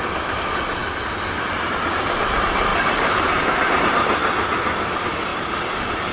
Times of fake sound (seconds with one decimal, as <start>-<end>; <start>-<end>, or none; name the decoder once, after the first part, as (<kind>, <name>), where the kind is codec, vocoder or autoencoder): none